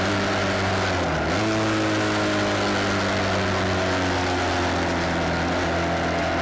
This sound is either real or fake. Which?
real